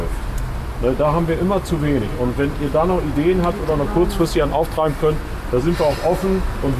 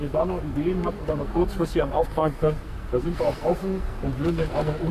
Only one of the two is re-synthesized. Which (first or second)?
second